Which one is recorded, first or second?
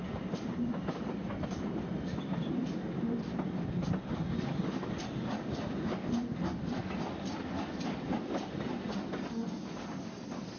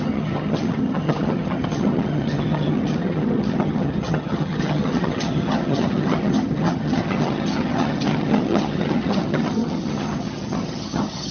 first